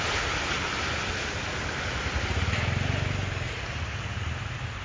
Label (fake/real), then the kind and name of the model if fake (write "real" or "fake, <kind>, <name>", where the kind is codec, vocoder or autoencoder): real